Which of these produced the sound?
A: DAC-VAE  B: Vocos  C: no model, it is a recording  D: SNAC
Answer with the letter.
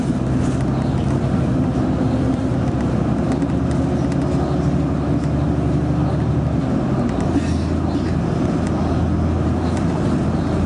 C